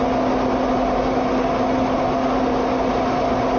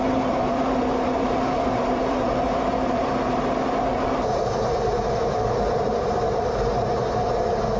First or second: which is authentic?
first